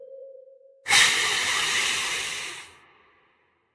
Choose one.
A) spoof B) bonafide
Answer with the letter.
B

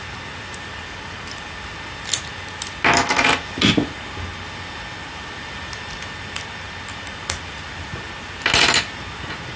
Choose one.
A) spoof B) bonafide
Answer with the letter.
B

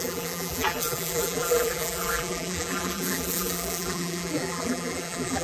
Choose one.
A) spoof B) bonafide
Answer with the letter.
A